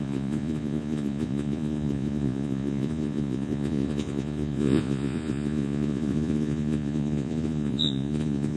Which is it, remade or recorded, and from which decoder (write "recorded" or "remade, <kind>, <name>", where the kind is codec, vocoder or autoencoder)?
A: remade, vocoder, Vocos